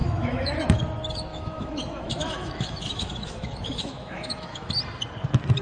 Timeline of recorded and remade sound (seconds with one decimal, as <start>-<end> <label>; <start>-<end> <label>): 0.0-0.8 remade; 0.8-1.3 recorded; 1.3-4.7 remade; 4.7-5.6 recorded